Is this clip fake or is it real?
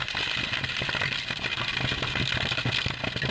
real